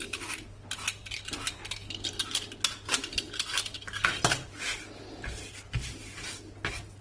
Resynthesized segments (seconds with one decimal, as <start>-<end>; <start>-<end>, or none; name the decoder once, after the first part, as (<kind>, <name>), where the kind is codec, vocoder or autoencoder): none